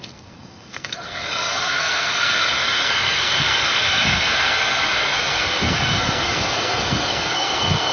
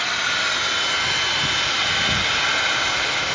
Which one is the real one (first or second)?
second